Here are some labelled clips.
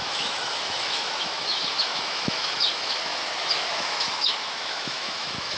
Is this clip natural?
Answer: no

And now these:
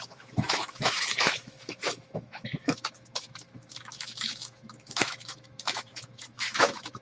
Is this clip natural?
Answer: no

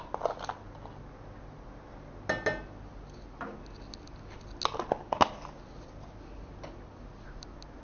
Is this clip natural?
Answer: yes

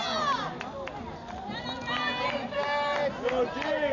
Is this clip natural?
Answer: yes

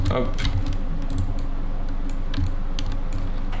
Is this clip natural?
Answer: yes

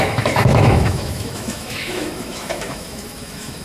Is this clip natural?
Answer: no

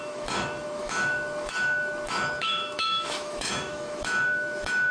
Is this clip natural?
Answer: no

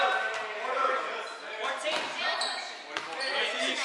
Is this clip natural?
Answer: yes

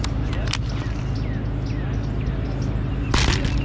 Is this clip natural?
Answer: yes